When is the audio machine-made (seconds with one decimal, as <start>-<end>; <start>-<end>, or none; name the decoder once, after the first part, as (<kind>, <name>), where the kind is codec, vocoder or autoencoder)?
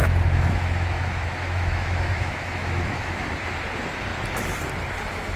0.0-3.2 (autoencoder, DAC-VAE)